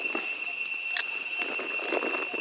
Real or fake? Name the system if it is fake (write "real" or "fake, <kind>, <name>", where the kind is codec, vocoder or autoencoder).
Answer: real